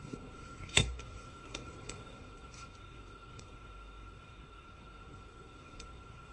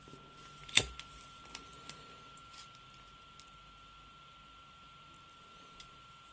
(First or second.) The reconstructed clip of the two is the first